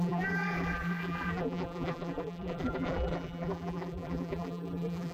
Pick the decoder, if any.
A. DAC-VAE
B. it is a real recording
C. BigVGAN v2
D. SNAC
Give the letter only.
C